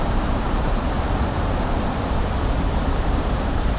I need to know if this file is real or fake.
fake